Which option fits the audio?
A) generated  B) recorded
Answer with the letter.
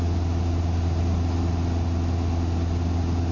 B